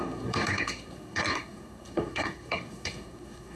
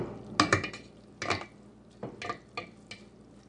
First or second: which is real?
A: second